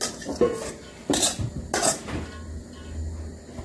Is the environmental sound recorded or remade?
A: recorded